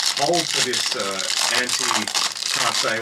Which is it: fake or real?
real